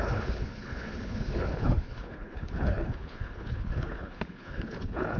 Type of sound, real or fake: fake